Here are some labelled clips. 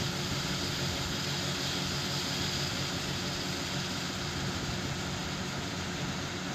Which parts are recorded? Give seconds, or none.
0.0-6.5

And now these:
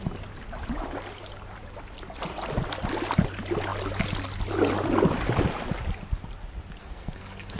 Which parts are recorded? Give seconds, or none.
0.0-6.8

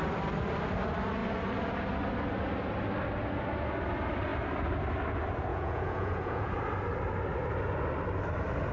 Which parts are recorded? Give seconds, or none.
0.0-5.5; 6.5-8.7

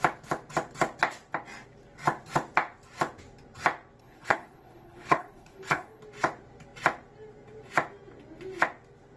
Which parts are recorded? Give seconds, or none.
0.0-4.0; 6.0-9.2

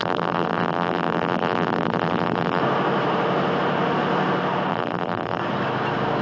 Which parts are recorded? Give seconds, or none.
2.6-4.7; 5.4-6.2

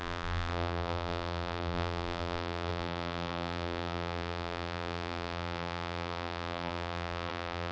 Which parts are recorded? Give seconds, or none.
none